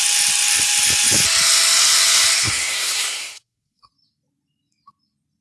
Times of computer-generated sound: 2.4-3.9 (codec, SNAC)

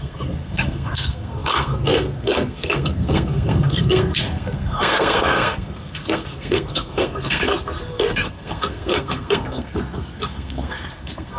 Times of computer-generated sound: 0.0-11.4 (codec, SNAC)

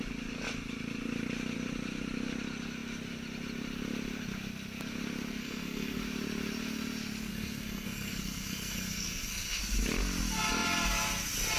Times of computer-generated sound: 5.4-6.0 (codec, SNAC); 7.3-9.6

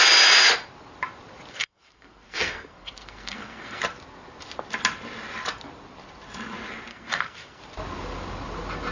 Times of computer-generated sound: 1.5-3.8 (codec, SNAC); 6.9-7.6